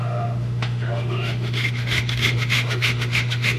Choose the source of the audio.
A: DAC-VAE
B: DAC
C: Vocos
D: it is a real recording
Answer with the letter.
A